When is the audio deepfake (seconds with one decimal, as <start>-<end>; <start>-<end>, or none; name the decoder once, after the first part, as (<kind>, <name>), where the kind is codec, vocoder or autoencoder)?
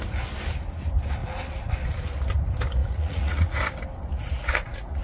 2.8-3.6 (vocoder, Vocos); 4.1-5.0